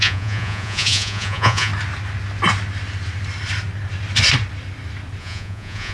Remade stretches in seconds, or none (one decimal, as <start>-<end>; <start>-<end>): 0.0-1.7; 5.2-5.9